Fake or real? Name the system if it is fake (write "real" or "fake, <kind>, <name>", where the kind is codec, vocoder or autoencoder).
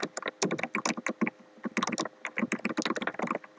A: real